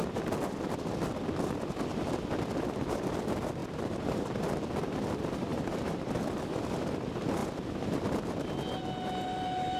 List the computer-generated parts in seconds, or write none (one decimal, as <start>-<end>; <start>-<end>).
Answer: 3.6-4.4; 5.5-6.1